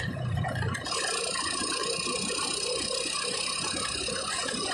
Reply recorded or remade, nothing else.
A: remade